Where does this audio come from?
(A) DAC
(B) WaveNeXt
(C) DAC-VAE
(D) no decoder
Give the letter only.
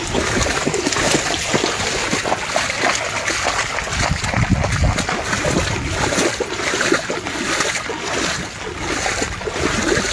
D